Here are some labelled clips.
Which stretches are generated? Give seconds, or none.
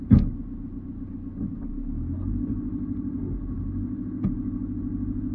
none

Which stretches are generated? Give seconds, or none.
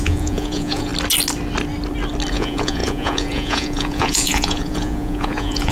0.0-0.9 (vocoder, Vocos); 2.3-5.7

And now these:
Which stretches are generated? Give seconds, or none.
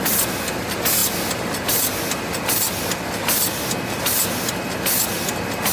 none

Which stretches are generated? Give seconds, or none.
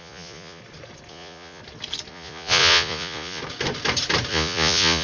0.0-0.6 (vocoder, Vocos); 1.1-1.6; 2.1-3.4; 4.3-5.0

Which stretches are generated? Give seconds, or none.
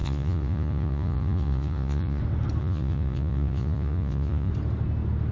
0.0-2.2 (vocoder, Vocos); 2.6-4.5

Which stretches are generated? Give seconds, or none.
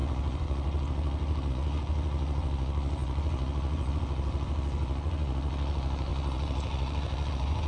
0.0-7.7 (vocoder, Vocos)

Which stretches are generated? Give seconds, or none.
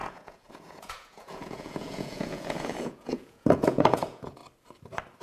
0.0-4.4 (vocoder, Vocos)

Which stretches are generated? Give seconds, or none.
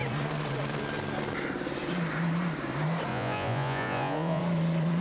3.1-4.4 (vocoder, Vocos)